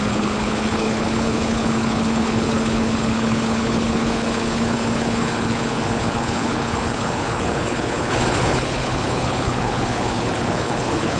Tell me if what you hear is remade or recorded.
remade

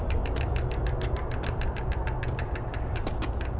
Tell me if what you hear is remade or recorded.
recorded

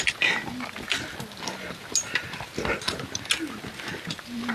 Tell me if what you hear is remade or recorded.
recorded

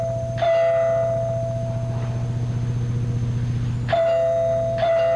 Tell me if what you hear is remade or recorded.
recorded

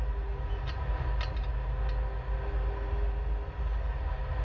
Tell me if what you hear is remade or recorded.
recorded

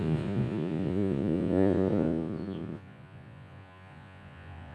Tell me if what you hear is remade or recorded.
remade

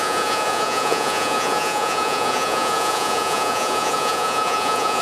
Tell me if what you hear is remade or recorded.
remade